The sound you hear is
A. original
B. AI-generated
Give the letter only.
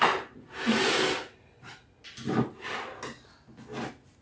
A